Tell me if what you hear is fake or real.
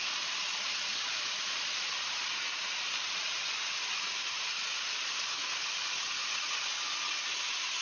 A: real